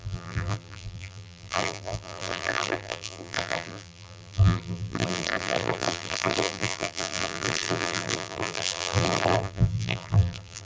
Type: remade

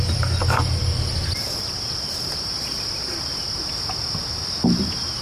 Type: recorded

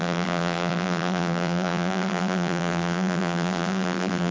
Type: remade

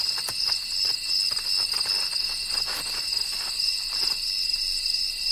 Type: recorded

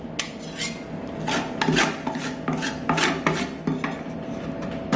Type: recorded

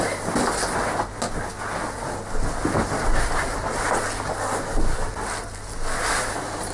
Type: recorded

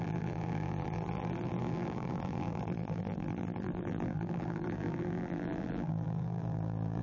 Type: remade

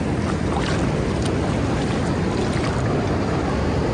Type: recorded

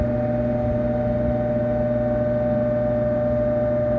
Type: recorded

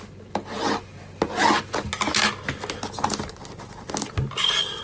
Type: recorded